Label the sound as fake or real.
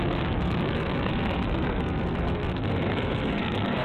fake